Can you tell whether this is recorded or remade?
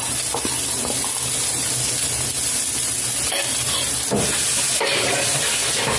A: recorded